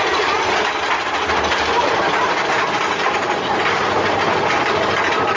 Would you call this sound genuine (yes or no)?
yes